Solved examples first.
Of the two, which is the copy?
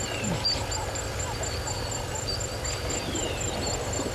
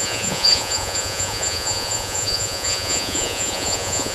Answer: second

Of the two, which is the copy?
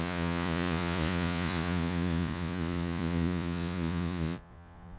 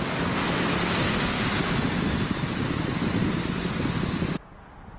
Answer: first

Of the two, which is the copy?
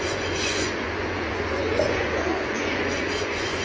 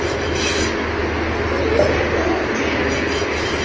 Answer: first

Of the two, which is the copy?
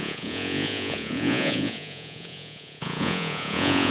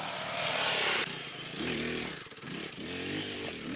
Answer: first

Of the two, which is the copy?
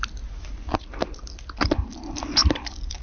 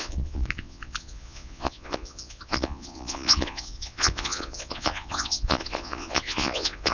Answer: second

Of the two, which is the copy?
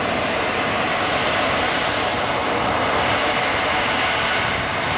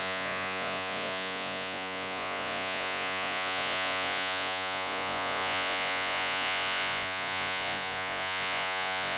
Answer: second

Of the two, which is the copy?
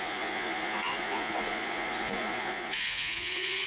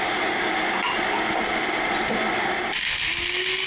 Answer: first